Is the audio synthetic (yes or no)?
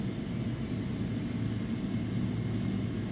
no